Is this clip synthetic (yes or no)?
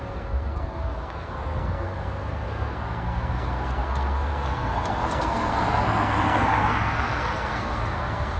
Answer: yes